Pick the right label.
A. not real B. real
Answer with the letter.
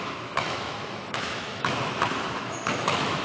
A